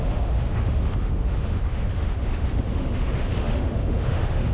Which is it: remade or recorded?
remade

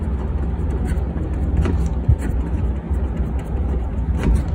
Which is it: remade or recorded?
recorded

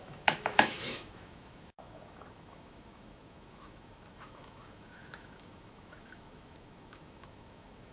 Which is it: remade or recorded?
remade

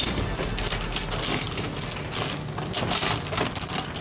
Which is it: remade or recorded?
recorded